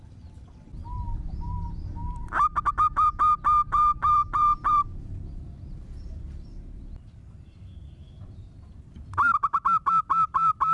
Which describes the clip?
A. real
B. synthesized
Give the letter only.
B